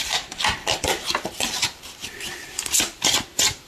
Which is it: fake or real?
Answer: real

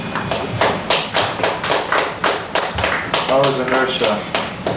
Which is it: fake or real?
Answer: real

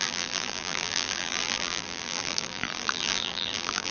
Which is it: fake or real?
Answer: fake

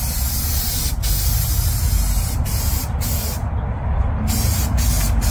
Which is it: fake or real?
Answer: real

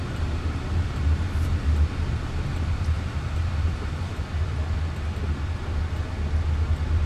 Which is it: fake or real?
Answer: real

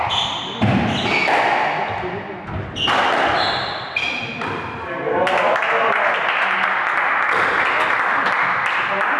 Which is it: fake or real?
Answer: real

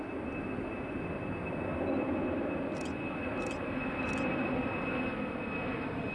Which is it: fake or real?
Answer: real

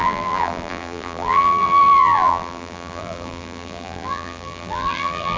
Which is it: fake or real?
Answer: fake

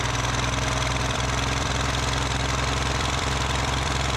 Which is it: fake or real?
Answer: fake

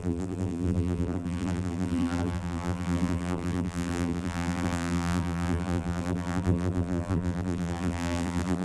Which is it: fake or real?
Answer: fake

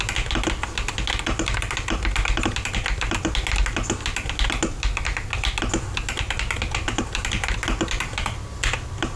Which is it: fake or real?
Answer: real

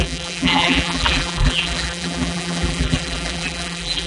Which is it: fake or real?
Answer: fake